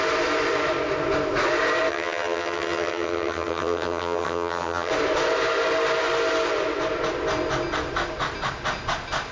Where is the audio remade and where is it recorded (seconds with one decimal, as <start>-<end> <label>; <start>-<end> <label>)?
0.0-1.9 recorded; 1.9-4.9 remade; 4.9-9.3 recorded